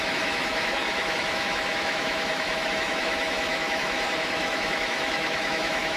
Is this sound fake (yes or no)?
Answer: yes